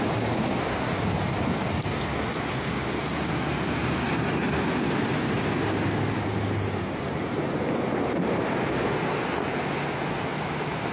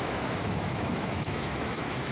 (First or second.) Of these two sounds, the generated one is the second